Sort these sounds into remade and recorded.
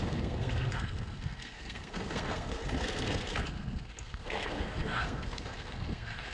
remade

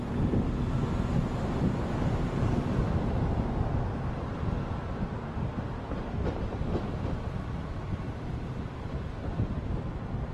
recorded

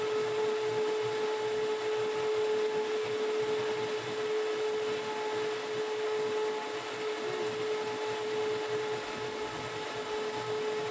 recorded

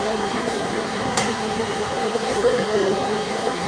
remade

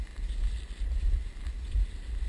recorded